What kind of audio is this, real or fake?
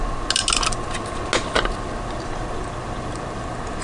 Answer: real